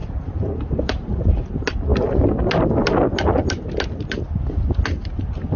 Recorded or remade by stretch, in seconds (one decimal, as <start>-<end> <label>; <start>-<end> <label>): 0.0-1.4 remade; 1.4-5.6 recorded